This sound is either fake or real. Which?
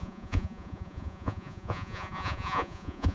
fake